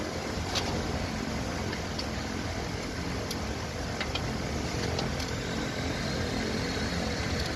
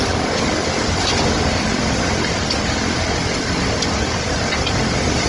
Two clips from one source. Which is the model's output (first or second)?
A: second